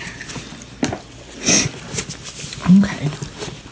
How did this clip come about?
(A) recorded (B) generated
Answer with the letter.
A